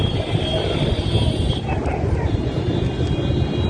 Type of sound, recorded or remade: recorded